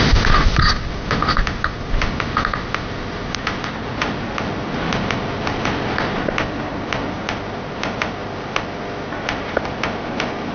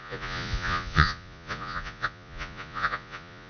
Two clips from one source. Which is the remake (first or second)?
second